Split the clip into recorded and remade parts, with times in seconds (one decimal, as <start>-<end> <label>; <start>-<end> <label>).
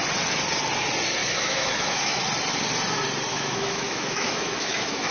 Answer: 0.0-1.2 recorded; 1.2-2.2 remade; 2.2-3.3 recorded; 3.3-5.1 remade